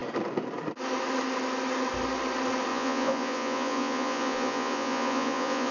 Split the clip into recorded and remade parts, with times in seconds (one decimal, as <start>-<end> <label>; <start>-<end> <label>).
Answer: 0.0-2.7 recorded; 2.7-5.7 remade